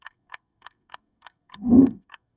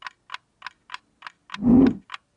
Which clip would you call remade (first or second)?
first